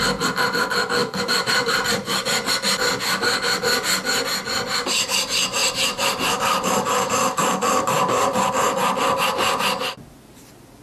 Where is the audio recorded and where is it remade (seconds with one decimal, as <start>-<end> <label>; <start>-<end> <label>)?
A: 0.0-1.0 recorded; 1.0-2.5 remade; 2.5-5.6 recorded; 5.6-8.5 remade; 8.5-10.8 recorded